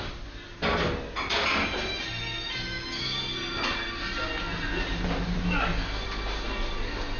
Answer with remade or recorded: recorded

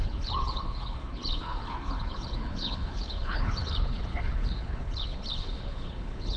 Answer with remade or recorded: remade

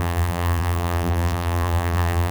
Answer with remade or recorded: remade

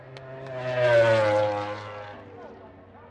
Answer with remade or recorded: recorded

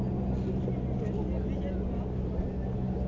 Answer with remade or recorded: recorded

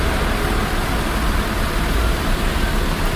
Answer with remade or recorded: recorded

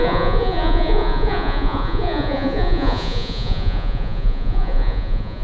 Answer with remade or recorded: remade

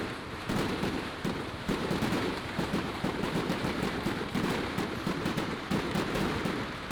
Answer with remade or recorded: remade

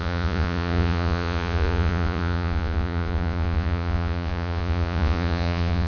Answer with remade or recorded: remade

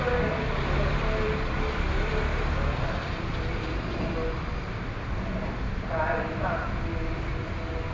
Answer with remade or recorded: recorded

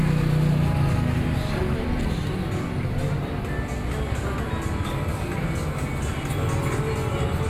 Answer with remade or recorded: recorded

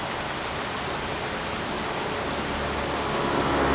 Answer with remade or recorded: recorded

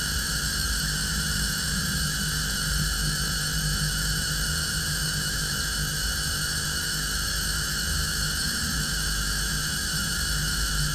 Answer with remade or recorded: remade